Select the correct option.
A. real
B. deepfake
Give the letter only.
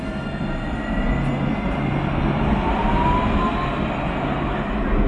A